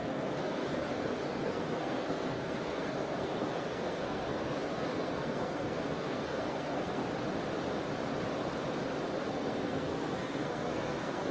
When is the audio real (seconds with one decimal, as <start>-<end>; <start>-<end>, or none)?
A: 7.0-9.2